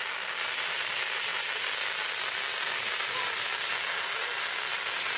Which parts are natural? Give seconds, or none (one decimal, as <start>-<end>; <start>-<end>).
0.0-5.2